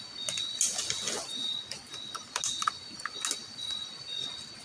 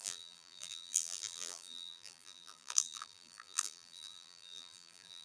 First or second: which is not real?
second